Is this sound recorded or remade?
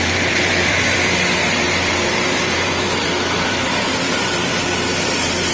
remade